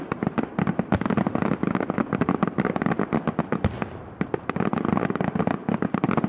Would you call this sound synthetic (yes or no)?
no